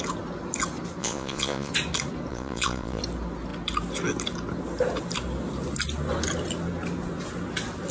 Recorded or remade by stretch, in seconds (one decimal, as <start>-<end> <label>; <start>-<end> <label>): 0.0-1.0 recorded; 1.0-1.7 remade; 1.7-2.3 recorded; 2.3-3.0 remade; 3.0-7.9 recorded